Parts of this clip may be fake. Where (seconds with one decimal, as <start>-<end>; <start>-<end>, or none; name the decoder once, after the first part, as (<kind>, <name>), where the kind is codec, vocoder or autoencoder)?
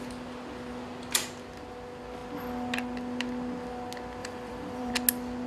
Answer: 4.2-4.9 (vocoder, BigVGAN v2)